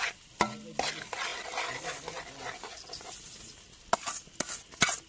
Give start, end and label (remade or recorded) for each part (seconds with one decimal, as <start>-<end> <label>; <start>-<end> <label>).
0.0-5.1 recorded